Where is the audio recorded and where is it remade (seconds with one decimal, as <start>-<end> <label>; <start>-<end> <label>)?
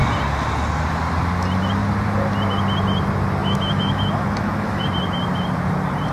0.0-3.4 recorded; 3.4-4.8 remade; 4.8-6.1 recorded